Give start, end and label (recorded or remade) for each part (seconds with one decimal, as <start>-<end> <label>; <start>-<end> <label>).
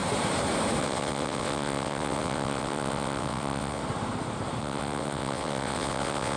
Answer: 0.0-0.8 recorded; 0.8-3.8 remade; 3.8-4.6 recorded; 4.6-6.4 remade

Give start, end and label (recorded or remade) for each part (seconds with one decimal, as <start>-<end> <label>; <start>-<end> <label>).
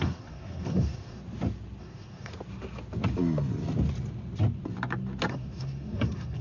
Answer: 0.0-1.2 remade; 1.2-1.8 recorded; 1.8-2.3 remade; 2.3-5.3 recorded; 5.3-6.4 remade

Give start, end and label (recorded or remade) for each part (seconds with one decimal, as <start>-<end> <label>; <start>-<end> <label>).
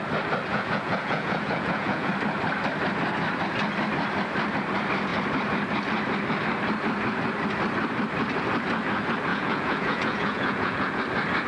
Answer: 0.0-0.5 recorded; 0.5-2.1 remade; 2.1-9.3 recorded; 9.3-11.0 remade; 11.0-11.5 recorded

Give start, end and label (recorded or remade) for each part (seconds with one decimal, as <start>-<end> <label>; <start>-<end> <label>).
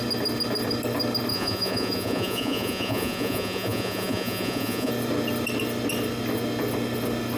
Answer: 0.0-1.3 recorded; 1.3-4.9 remade; 4.9-7.4 recorded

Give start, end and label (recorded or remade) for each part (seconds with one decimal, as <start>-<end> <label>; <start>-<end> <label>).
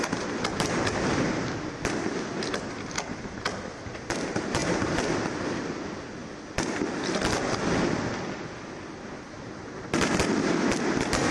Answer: 0.0-11.3 recorded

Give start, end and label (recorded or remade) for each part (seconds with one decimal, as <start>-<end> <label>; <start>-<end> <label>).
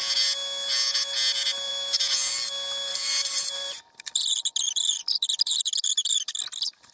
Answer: 0.0-2.9 recorded; 2.9-3.8 remade; 3.8-6.9 recorded